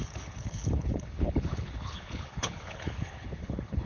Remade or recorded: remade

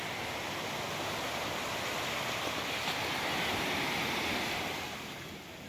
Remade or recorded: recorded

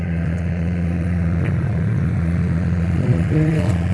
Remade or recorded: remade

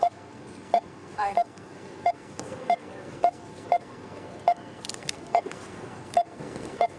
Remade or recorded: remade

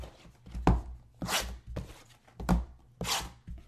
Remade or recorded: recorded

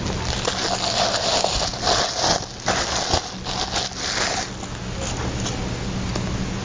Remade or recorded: recorded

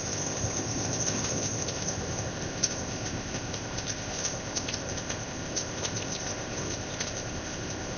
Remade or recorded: remade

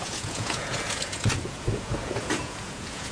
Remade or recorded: remade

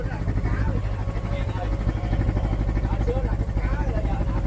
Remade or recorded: recorded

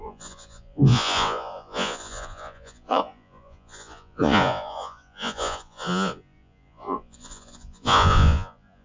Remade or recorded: remade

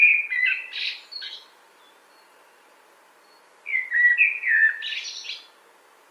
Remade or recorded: recorded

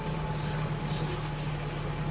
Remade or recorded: recorded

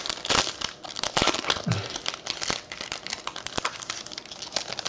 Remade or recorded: recorded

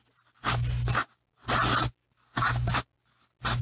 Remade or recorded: recorded